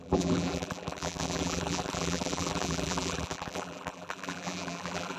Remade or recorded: remade